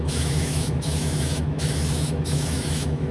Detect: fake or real fake